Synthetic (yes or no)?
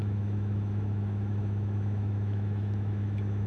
yes